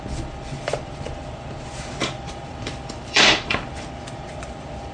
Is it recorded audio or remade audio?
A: remade